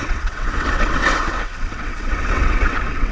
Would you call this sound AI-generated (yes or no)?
yes